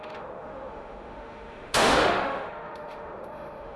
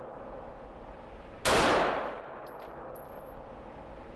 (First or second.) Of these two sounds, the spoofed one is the first